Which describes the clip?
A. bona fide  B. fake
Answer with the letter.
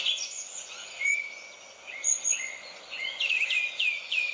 B